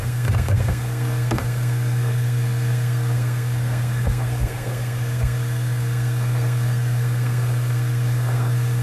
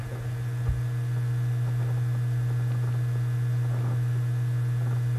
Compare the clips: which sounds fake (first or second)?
first